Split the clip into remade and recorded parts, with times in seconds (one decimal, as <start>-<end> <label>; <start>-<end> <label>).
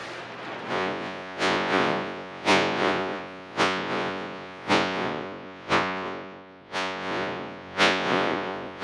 0.0-0.7 recorded; 0.7-8.8 remade